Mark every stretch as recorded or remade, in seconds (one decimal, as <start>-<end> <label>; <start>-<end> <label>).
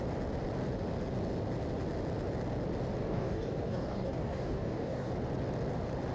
0.0-3.0 recorded; 3.0-5.1 remade; 5.1-6.1 recorded